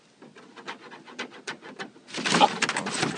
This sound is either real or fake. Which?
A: real